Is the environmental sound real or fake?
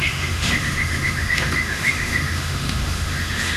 fake